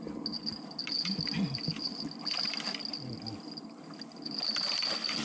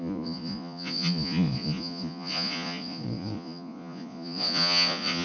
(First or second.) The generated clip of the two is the second